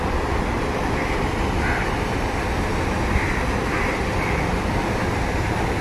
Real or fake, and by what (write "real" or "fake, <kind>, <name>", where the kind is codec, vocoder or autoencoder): real